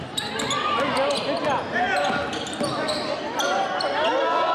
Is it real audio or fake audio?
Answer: real